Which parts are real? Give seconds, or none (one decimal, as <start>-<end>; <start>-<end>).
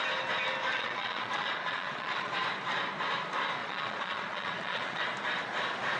0.0-0.7; 2.3-3.6; 5.0-6.0